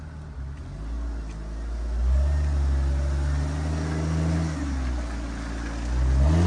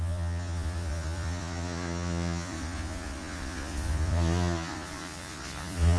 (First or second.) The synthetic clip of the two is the second